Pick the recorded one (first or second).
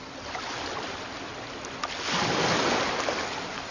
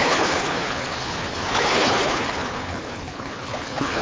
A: first